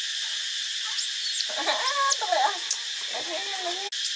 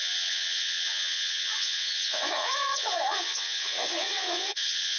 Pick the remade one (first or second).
second